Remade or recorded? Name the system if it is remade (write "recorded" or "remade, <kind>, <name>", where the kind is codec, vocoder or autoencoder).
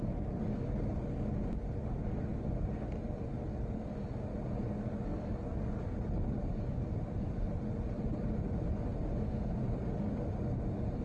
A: recorded